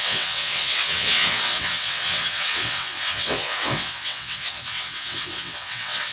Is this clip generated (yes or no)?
yes